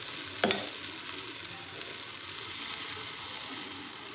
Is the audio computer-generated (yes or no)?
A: no